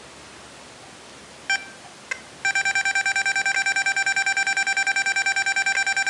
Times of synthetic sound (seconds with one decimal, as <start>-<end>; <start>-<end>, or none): none

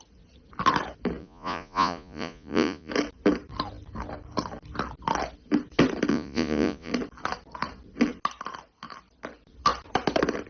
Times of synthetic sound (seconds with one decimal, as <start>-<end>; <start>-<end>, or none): 1.2-2.9; 6.1-6.9

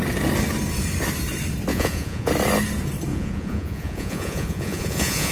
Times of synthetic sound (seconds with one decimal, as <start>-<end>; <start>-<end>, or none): 1.7-2.3; 3.1-5.3

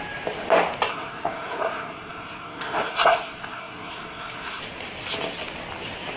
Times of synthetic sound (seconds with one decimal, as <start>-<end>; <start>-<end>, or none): 0.9-4.6

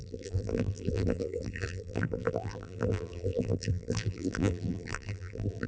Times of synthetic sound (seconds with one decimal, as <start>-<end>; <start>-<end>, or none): 0.0-5.7